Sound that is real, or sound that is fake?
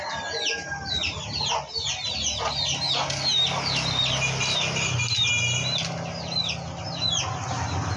real